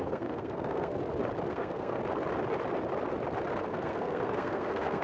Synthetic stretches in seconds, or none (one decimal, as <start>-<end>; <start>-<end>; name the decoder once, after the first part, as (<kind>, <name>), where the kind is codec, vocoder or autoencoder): 0.0-1.0 (codec, SNAC); 1.5-2.0; 3.7-5.0